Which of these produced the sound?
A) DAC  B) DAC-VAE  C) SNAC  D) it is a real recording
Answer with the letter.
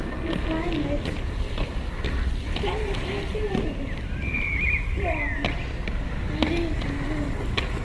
D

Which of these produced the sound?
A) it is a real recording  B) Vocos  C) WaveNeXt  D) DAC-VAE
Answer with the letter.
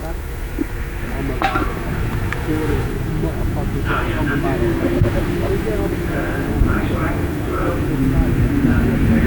D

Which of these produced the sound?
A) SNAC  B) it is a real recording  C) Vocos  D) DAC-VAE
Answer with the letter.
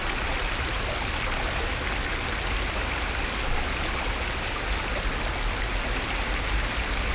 B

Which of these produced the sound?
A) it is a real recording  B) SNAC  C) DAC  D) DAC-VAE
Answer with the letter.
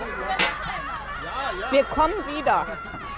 A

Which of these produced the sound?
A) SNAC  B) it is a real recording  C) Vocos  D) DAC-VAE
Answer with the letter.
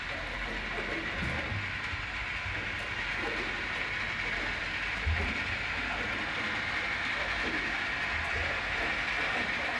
B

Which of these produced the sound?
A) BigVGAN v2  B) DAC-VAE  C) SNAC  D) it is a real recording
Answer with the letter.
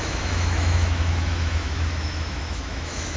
B